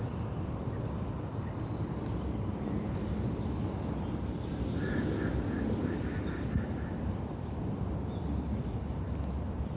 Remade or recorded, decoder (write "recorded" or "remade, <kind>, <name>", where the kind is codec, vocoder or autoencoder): recorded